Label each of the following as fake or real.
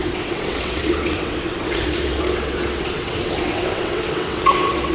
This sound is fake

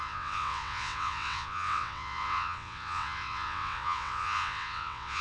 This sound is fake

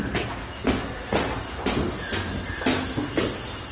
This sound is real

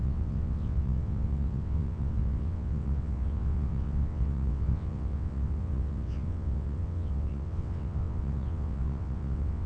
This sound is fake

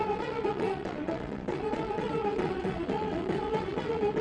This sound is fake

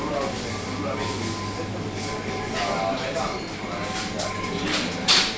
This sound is real